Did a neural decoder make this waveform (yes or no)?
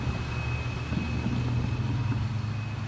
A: no